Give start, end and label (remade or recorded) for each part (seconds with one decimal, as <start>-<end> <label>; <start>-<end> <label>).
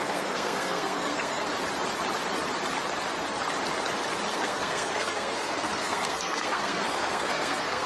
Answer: 0.0-1.5 remade; 1.5-4.3 recorded; 4.3-7.9 remade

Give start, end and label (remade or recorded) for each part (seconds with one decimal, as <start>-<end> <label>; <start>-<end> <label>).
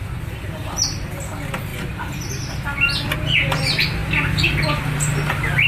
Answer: 0.0-5.7 recorded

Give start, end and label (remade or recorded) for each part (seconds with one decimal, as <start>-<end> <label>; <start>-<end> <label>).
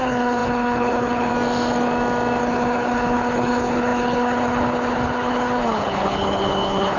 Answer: 0.0-1.3 remade; 1.3-2.4 recorded; 2.4-7.0 remade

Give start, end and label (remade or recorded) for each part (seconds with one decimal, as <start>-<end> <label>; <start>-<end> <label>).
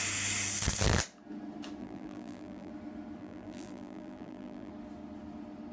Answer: 0.0-1.8 recorded; 1.8-2.7 remade; 2.7-3.2 recorded; 3.2-4.7 remade; 4.7-5.7 recorded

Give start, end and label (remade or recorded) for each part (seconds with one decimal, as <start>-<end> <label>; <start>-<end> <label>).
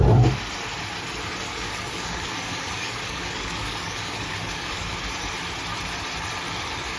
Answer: 0.0-1.5 recorded; 1.5-4.9 remade; 4.9-7.0 recorded